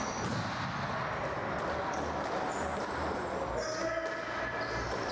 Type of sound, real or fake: real